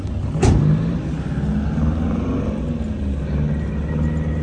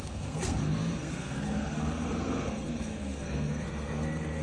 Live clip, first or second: first